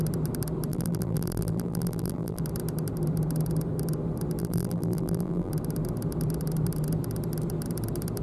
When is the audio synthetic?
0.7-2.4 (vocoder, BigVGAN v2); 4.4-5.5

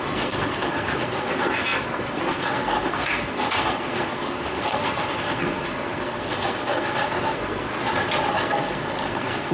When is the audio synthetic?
0.0-7.7 (codec, SNAC); 8.3-9.5

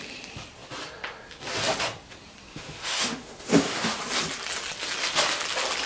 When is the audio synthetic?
2.5-4.0 (autoencoder, DAC-VAE)